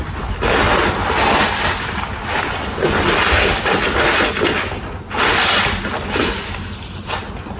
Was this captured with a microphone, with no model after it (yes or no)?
yes